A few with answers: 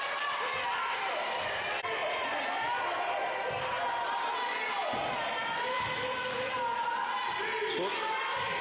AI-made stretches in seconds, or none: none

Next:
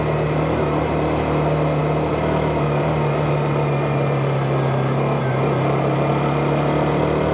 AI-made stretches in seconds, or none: none